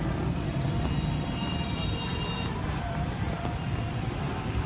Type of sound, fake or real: fake